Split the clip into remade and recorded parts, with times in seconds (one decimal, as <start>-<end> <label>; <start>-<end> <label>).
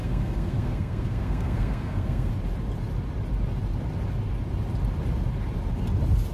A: 0.0-2.3 remade; 2.3-6.3 recorded